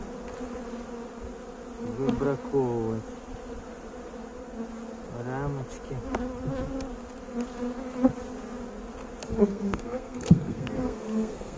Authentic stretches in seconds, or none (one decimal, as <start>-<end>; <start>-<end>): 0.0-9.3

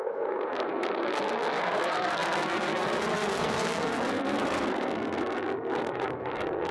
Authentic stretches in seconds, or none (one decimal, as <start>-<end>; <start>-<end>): none

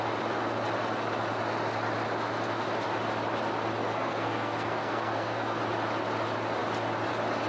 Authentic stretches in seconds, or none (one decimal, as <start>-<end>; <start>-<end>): 0.0-3.8; 5.6-7.5

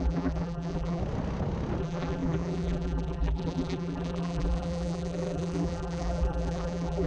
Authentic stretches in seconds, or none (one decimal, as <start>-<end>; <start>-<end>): 1.0-1.8

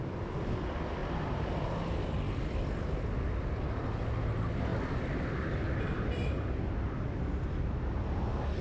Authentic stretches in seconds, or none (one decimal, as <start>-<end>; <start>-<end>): 0.0-1.0; 1.7-4.7; 6.3-8.6

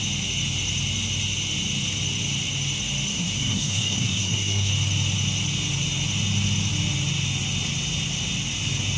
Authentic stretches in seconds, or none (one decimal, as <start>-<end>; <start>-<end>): 0.0-3.1; 4.7-9.0